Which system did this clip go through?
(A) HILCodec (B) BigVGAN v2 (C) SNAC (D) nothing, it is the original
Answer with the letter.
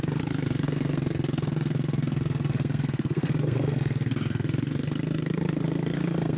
C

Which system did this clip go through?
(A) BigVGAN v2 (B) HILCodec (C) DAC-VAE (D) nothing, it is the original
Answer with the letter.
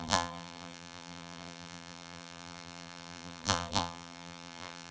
A